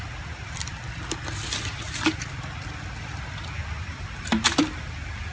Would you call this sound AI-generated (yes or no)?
no